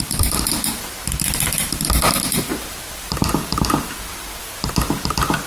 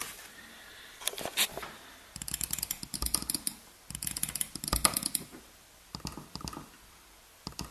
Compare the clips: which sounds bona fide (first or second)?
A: second